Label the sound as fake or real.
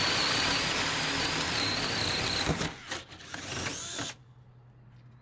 real